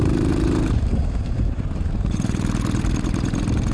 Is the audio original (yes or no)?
no